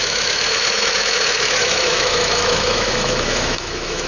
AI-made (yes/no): yes